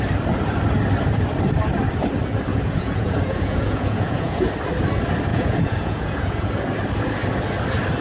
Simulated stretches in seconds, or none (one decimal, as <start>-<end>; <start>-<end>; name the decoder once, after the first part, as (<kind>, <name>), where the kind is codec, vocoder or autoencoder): 2.5-4.5 (vocoder, Vocos); 5.3-6.5